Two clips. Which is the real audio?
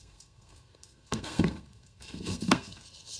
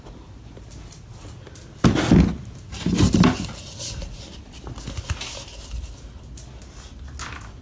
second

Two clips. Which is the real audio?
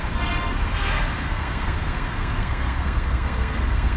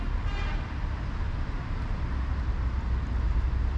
second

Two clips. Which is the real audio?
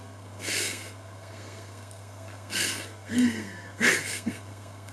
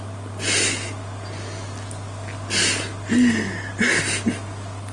second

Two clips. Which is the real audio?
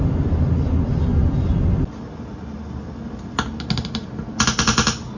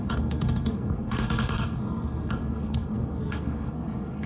first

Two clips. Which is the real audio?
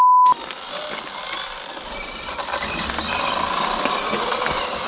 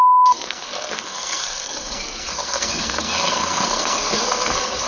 first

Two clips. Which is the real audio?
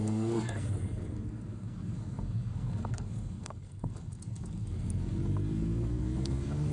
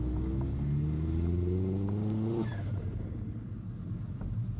second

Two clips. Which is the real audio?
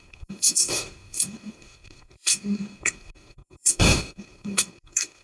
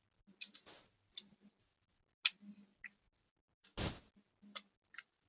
second